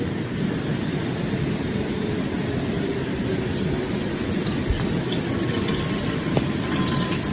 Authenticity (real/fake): real